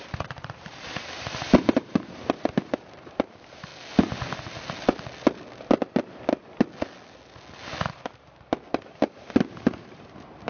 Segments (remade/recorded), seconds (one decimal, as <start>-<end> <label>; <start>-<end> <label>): 0.0-3.7 remade; 3.7-7.9 recorded; 7.9-10.5 remade